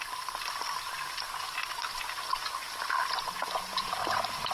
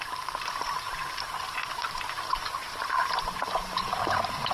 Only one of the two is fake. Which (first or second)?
second